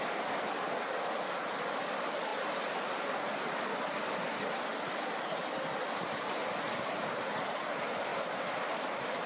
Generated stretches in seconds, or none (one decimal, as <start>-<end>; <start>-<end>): 8.1-9.3